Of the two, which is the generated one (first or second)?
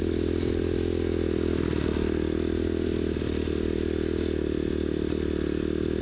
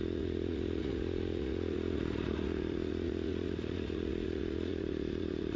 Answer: second